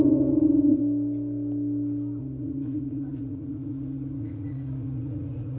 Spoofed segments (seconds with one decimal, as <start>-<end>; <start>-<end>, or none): 0.0-0.8; 2.2-5.6